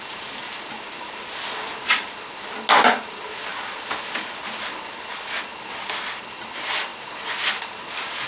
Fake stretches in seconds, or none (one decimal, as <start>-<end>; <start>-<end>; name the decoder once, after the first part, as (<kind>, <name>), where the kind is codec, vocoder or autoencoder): none